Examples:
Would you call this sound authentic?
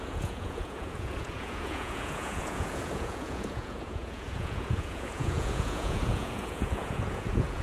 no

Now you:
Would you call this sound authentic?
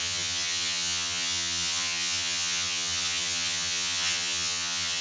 no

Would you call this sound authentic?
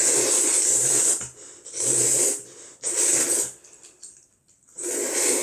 yes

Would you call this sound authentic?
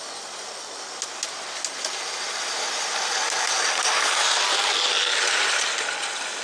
yes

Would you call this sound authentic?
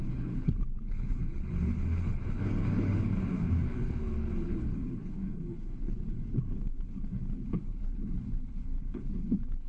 no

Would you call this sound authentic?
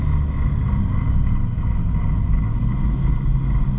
yes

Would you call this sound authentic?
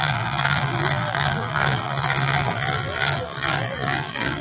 no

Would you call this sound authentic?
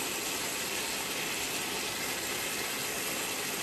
yes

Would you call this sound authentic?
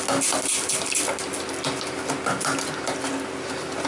yes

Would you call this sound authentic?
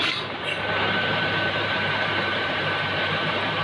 no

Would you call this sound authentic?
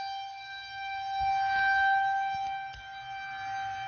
yes